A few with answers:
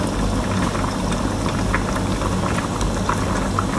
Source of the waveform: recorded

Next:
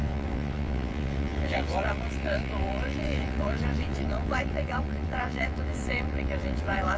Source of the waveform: remade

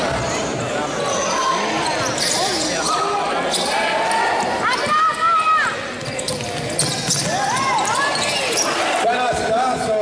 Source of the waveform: recorded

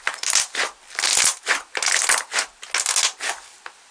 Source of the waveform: recorded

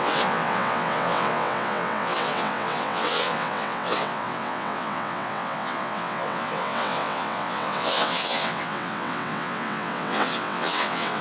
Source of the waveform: remade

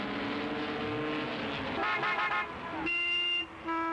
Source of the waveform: recorded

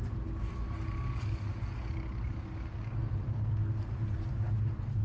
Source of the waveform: recorded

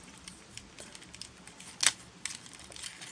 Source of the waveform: recorded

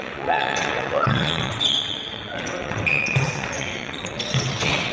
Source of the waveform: remade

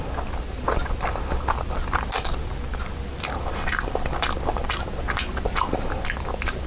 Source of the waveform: recorded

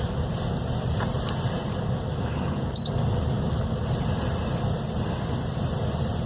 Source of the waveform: recorded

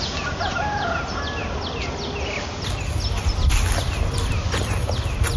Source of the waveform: recorded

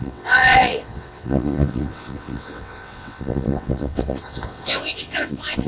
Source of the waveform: remade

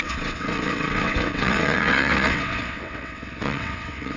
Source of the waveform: remade